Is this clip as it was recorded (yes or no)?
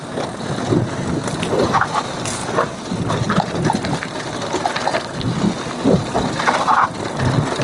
yes